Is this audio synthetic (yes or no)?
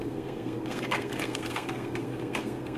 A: yes